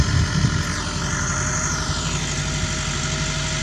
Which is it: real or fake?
real